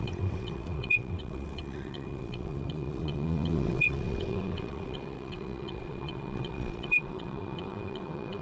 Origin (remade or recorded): remade